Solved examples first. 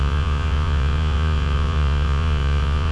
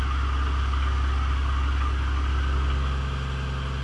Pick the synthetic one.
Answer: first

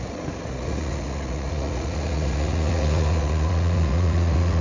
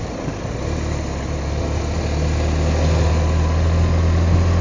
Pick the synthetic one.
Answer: first